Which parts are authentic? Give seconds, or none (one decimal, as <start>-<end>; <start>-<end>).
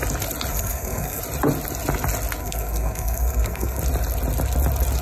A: 0.0-0.5; 1.2-2.4; 3.8-5.0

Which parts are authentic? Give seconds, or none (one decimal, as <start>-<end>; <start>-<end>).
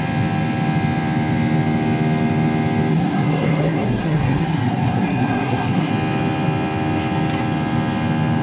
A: 0.0-2.9; 5.9-8.4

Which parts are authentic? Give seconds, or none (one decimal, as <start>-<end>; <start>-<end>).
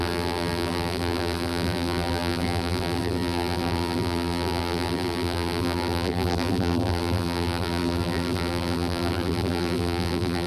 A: none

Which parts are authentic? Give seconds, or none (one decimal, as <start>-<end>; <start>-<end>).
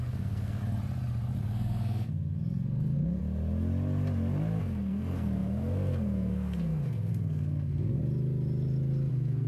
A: 0.6-1.4; 3.2-4.6; 8.0-9.1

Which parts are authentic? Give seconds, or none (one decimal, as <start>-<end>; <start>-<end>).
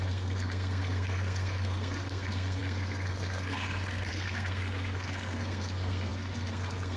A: none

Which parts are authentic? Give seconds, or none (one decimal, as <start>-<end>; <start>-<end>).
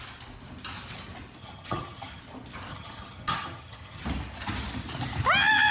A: 0.0-1.4; 2.2-2.7; 4.0-5.7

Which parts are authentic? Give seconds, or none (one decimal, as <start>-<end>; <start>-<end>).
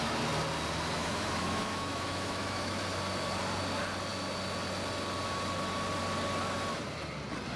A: 0.0-1.0; 2.8-7.6